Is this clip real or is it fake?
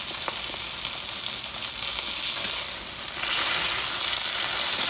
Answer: real